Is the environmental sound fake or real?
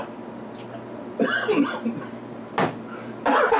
real